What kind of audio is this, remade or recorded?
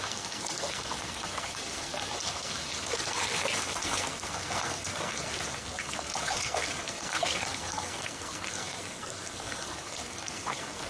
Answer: remade